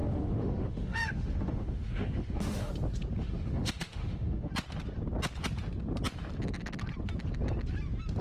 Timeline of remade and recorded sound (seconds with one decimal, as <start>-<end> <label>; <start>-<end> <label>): 0.0-2.7 remade; 2.7-3.2 recorded; 3.2-4.5 remade; 4.5-8.2 recorded